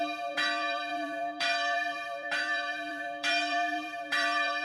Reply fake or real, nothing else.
fake